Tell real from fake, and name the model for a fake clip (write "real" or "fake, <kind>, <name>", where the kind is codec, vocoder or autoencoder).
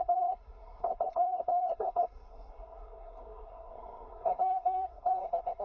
fake, codec, SNAC